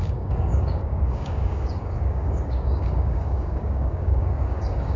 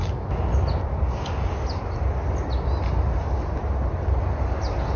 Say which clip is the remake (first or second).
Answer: first